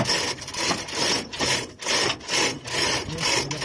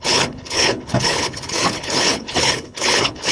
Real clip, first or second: first